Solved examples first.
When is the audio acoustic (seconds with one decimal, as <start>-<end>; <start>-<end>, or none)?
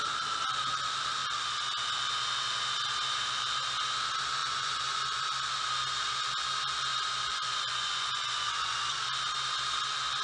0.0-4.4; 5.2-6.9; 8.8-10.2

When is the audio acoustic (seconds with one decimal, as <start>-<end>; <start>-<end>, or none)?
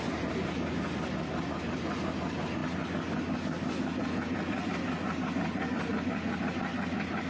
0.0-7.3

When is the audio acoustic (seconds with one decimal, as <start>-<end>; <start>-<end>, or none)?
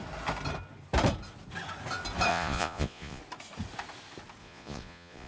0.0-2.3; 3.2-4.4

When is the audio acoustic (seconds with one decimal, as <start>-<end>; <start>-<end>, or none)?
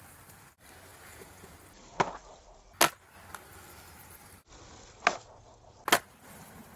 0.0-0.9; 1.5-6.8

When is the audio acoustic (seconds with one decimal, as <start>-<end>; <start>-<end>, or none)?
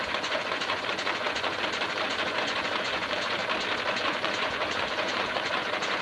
3.4-3.9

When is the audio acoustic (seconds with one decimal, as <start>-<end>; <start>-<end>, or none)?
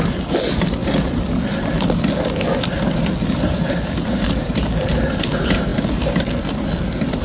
0.0-7.2